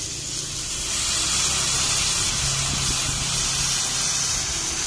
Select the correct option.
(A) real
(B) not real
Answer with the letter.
A